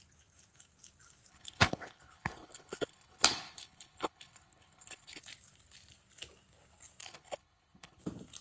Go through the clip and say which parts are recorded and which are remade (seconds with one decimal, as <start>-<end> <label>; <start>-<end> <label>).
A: 0.0-1.3 recorded; 1.3-5.2 remade; 5.2-7.0 recorded; 7.0-8.0 remade; 8.0-8.4 recorded